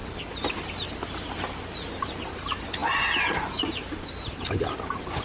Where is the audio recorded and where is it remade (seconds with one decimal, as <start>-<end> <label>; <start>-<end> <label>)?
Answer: 0.0-5.2 recorded

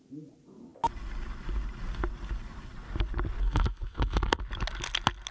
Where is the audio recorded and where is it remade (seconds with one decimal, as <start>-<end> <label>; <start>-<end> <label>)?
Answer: 0.0-3.4 recorded; 3.4-4.4 remade; 4.4-5.3 recorded

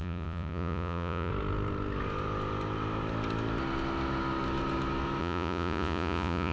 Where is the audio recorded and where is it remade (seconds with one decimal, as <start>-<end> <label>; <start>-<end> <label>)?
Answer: 0.0-1.3 remade; 1.3-5.2 recorded; 5.2-6.5 remade